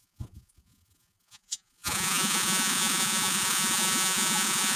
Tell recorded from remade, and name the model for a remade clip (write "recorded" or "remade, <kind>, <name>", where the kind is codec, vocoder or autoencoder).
remade, vocoder, Vocos